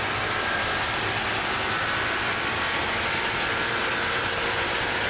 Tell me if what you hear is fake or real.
real